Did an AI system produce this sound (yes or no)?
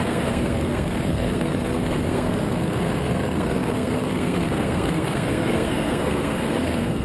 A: yes